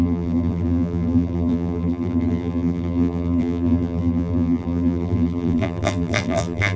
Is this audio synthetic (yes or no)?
yes